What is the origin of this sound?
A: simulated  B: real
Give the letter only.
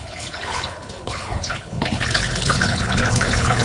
A